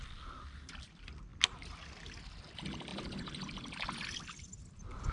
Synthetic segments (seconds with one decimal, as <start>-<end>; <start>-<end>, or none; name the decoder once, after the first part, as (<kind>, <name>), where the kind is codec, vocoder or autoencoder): none